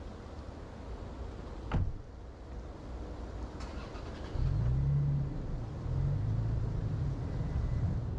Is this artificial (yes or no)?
no